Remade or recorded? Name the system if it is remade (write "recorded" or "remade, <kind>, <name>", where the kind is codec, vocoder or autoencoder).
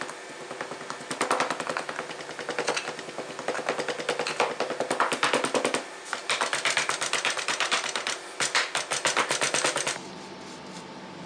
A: recorded